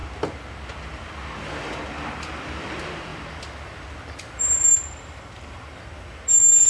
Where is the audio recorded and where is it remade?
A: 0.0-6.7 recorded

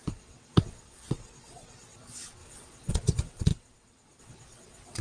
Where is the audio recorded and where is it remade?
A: 0.0-5.0 remade

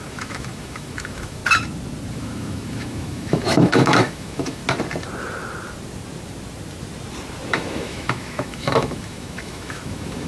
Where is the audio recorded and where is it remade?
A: 0.0-1.4 remade; 1.4-2.1 recorded; 2.1-4.6 remade; 4.6-7.5 recorded; 7.5-10.3 remade

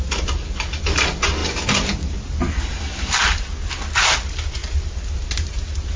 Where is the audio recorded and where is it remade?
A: 0.0-6.0 recorded